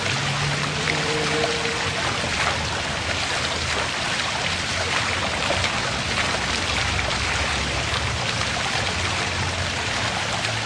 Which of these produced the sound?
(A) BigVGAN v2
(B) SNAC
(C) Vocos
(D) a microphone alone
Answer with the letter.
D